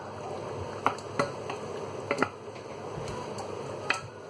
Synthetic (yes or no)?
no